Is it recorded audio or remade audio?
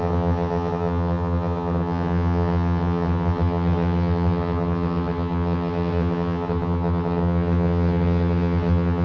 remade